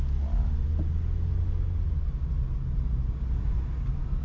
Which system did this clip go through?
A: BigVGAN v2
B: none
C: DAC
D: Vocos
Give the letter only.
B